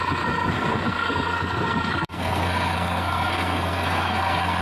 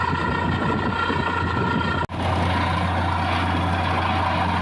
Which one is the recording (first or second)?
second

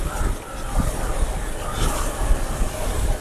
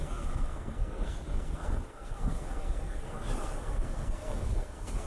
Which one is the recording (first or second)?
first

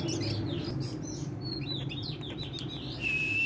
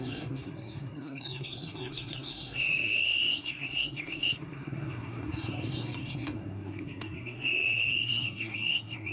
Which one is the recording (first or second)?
first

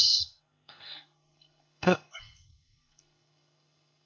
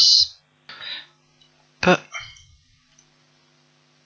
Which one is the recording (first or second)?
second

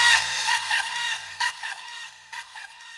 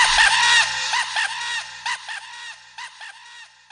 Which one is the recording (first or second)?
second